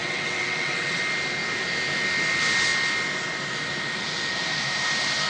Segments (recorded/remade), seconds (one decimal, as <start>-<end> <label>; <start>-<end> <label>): 0.0-1.0 remade; 1.0-5.3 recorded